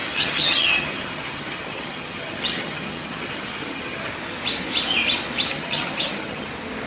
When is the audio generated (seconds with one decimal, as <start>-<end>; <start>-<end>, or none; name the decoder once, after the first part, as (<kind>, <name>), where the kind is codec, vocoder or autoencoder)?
0.0-4.1 (vocoder, HiFi-GAN); 5.5-6.5